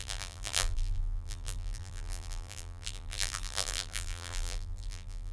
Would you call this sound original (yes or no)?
no